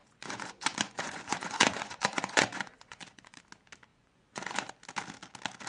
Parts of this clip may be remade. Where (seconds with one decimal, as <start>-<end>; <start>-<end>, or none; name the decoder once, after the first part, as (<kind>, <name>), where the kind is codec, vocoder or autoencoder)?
0.0-3.4 (vocoder, Vocos); 3.9-4.7